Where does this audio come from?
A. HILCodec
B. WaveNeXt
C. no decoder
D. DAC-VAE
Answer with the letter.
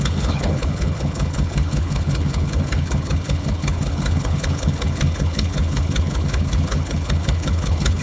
A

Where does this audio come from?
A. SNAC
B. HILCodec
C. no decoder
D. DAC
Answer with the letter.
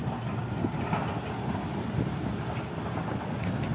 C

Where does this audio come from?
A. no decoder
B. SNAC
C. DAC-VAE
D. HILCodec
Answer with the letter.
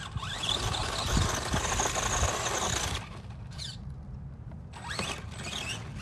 A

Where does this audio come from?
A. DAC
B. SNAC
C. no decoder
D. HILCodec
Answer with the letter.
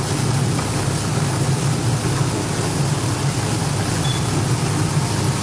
C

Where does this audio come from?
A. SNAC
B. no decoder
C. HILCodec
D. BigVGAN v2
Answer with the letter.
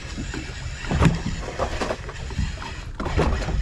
B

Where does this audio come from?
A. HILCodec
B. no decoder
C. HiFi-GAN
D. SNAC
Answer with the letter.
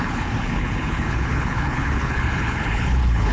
A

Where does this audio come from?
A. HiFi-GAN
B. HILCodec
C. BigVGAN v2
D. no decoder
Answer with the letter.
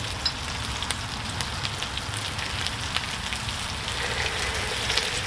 D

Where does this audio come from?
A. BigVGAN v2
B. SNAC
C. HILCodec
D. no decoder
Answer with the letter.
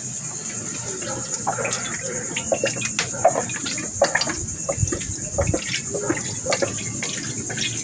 D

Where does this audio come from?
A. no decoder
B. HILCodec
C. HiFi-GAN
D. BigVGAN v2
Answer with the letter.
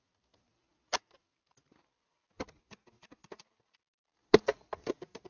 A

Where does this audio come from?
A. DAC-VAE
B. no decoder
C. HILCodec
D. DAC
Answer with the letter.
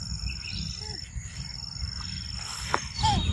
B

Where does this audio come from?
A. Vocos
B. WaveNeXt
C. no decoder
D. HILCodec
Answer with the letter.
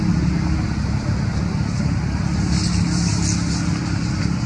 C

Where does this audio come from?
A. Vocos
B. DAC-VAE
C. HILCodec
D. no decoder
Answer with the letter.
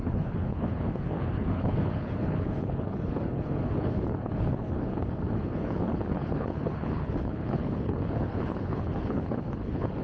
C